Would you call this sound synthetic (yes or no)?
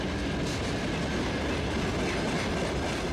no